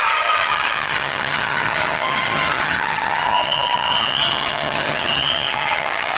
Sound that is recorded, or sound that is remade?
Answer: remade